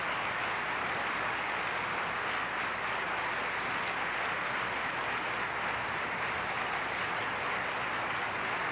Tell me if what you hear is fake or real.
real